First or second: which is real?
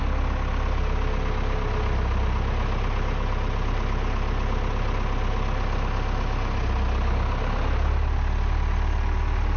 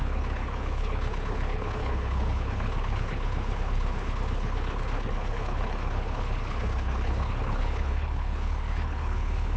first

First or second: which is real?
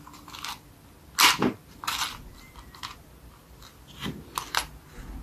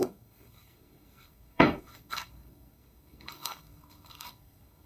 first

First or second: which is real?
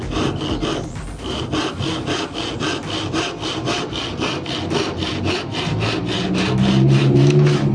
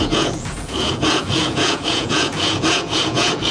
first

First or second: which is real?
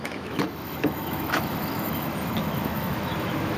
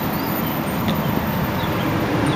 second